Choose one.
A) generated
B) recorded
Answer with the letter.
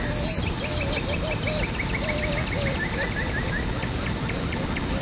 B